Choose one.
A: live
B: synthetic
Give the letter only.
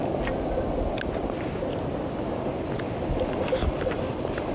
A